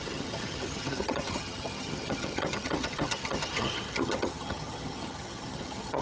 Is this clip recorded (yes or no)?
no